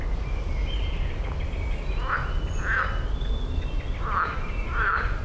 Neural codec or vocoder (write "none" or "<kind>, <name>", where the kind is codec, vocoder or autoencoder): none